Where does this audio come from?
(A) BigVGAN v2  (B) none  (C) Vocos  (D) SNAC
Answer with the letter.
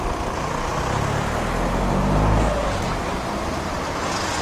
B